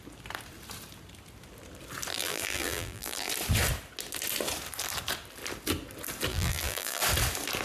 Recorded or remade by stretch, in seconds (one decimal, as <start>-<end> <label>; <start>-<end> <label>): 0.0-2.1 recorded; 2.1-3.3 remade; 3.3-6.3 recorded; 6.3-7.0 remade; 7.0-7.6 recorded